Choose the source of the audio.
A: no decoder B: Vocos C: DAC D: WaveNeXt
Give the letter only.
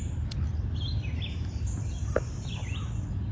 A